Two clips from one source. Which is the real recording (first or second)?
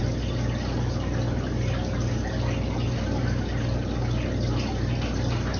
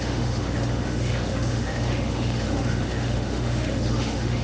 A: first